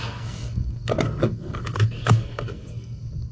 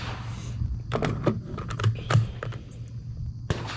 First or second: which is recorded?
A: second